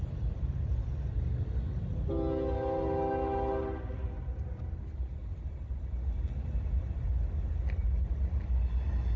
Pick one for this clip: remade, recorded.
recorded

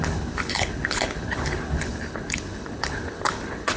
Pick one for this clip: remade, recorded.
remade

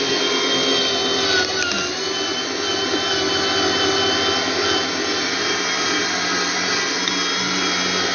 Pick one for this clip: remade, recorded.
recorded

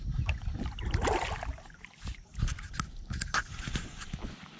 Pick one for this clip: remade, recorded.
recorded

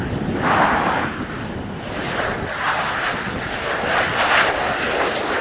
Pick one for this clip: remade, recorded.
recorded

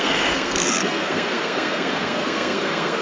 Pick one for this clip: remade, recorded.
remade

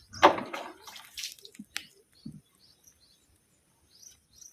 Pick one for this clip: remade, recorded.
recorded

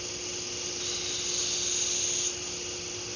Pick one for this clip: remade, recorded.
recorded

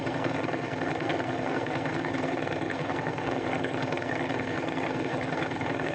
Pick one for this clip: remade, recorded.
remade